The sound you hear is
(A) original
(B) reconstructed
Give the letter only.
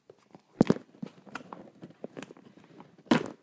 A